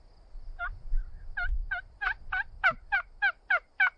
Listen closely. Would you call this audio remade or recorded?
recorded